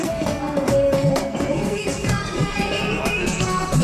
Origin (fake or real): fake